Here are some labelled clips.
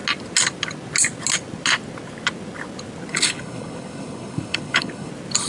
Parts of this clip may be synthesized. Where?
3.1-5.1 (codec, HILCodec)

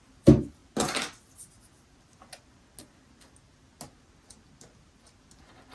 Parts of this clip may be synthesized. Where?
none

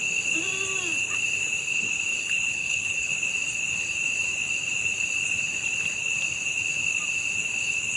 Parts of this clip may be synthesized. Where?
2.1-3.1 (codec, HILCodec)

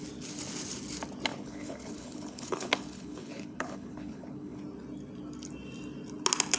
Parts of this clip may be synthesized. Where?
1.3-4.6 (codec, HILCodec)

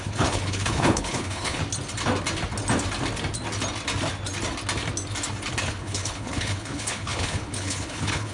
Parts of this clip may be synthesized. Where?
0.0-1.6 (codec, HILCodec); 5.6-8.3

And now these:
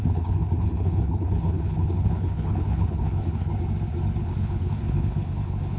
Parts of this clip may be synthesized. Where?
0.0-3.5 (codec, HILCodec); 4.2-5.8

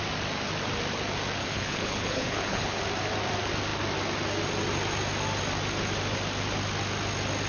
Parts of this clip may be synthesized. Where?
1.4-2.8 (codec, HILCodec)